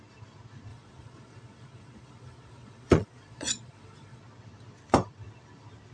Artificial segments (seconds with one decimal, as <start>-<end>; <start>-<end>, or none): 0.7-4.2